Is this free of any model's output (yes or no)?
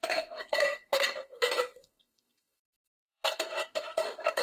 no